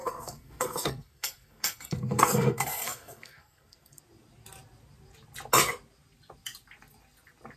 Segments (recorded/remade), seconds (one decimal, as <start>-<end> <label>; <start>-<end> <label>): 0.0-4.0 remade; 4.0-7.6 recorded